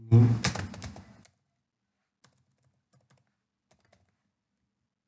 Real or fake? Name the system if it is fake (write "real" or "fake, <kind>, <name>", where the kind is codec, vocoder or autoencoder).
real